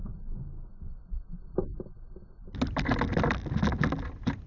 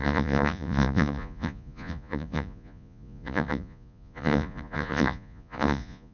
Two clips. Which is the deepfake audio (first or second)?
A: second